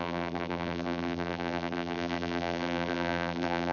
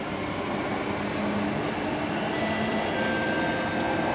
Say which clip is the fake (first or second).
first